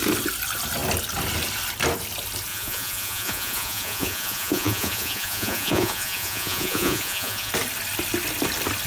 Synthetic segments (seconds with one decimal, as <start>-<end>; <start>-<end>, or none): 2.5-7.5